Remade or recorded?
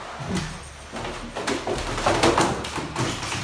recorded